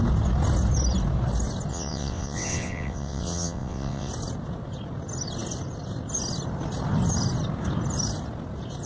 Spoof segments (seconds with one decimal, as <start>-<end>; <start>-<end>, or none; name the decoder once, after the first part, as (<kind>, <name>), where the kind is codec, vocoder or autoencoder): 1.7-4.1 (vocoder, WaveNeXt)